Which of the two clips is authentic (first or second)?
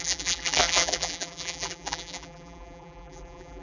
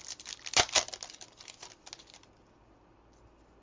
second